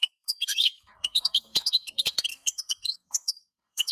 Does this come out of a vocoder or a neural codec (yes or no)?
yes